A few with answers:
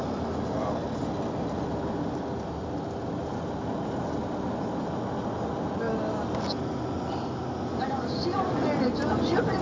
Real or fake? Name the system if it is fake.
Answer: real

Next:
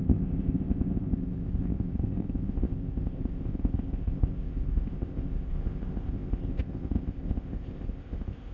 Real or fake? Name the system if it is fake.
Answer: fake, codec, ZipCodec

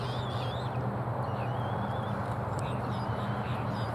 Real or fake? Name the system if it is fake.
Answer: real